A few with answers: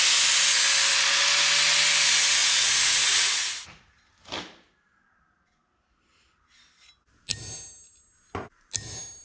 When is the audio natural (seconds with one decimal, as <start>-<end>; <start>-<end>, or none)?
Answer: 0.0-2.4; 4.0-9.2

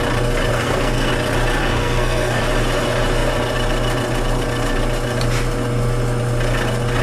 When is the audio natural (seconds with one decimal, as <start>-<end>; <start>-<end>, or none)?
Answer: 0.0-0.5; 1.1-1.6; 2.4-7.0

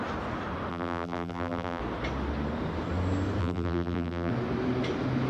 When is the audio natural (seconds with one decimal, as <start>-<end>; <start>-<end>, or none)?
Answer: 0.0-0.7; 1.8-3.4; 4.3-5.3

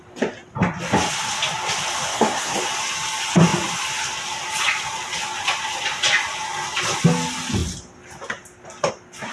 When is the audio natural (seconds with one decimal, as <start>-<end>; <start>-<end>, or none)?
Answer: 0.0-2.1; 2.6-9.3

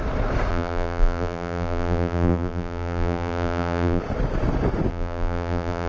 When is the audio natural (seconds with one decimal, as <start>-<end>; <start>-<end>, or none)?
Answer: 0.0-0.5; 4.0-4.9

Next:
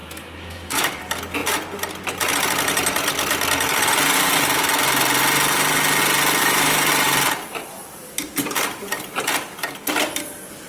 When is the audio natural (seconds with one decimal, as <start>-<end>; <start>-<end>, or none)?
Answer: 1.0-6.4; 6.9-10.7

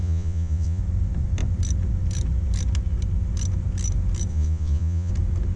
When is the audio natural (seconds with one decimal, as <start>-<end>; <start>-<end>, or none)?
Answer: 0.8-4.3; 5.1-5.6